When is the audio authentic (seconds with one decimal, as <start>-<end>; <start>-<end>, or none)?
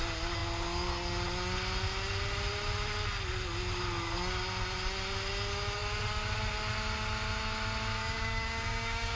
0.0-8.0